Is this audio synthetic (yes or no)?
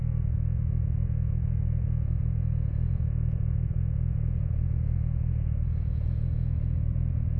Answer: yes